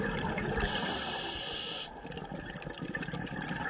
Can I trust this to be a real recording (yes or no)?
no